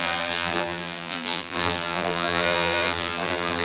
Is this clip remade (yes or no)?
yes